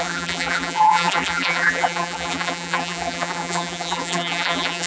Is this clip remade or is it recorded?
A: remade